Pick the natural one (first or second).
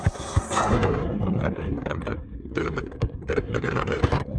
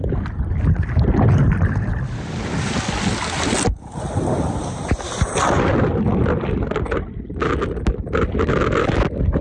second